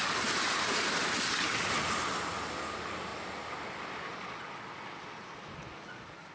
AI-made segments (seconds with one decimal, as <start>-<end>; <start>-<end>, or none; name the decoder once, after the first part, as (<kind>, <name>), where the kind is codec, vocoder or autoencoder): none